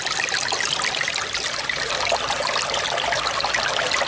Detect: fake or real real